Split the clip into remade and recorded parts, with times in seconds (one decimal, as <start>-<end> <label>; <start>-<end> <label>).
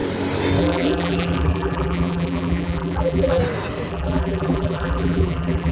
0.0-0.6 recorded; 0.6-3.4 remade; 3.4-3.9 recorded; 3.9-5.7 remade